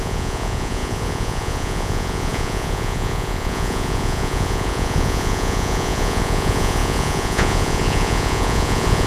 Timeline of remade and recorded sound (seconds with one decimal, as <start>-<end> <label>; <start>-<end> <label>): 0.0-9.1 remade